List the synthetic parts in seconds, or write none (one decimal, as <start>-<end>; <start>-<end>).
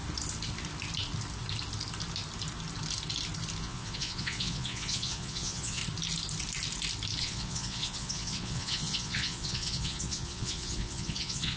3.6-5.8; 7.2-11.6